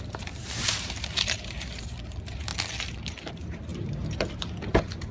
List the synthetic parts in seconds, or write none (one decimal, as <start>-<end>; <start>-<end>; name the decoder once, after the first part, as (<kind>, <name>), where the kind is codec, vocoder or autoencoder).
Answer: 0.0-2.5 (vocoder, BigVGAN v2); 3.3-5.1